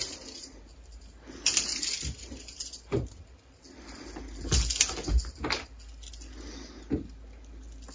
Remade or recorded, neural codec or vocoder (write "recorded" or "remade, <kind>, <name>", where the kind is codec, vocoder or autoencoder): recorded